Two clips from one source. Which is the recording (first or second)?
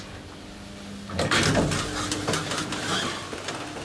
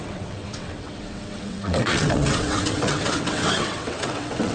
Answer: first